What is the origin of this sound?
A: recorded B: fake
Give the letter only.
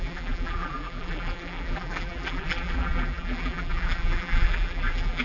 B